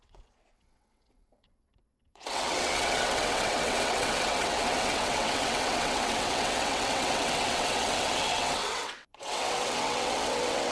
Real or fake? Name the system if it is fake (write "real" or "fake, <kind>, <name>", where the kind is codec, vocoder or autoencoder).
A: fake, vocoder, WaveNeXt